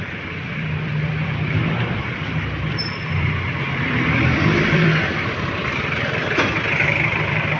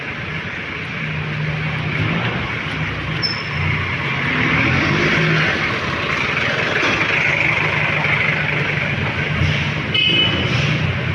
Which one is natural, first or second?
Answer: second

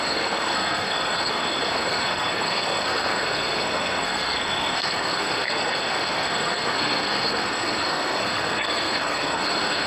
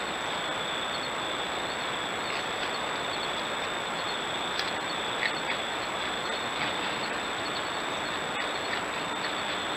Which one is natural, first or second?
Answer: second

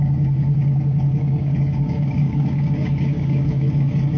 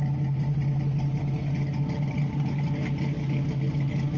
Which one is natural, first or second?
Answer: second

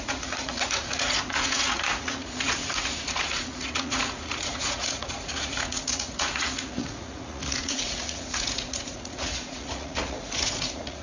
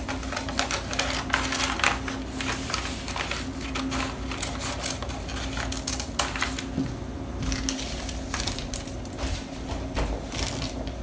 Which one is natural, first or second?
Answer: second